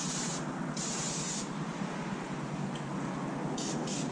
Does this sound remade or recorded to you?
recorded